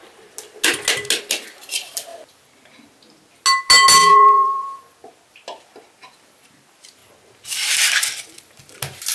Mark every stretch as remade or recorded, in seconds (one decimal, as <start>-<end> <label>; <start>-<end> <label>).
0.0-4.0 recorded; 4.0-4.8 remade; 4.8-9.1 recorded